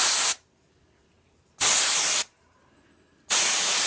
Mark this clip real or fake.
real